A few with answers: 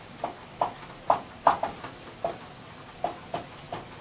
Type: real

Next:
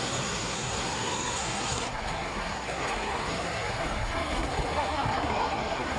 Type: fake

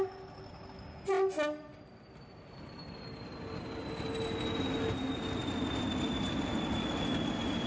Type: real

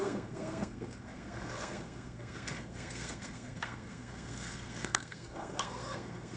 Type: fake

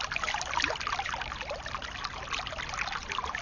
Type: fake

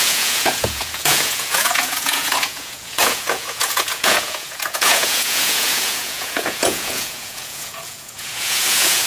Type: fake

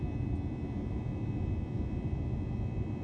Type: real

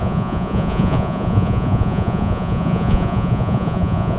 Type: fake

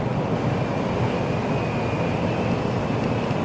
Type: real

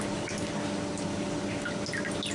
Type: real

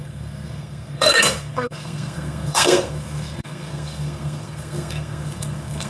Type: fake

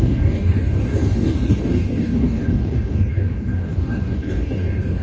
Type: fake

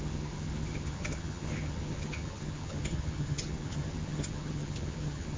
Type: fake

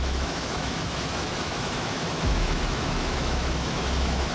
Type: fake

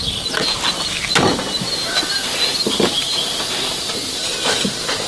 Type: real